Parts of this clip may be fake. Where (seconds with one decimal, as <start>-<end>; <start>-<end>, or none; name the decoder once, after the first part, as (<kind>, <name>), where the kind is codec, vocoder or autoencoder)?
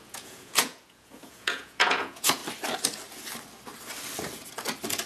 0.0-2.4 (vocoder, Vocos)